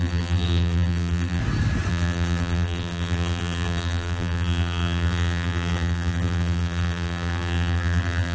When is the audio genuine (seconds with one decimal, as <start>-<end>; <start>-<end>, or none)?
1.4-1.9